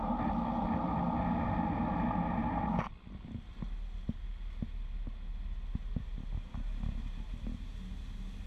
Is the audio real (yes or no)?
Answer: yes